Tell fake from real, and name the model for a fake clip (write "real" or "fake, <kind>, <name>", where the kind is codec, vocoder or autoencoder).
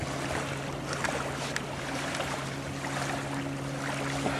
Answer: real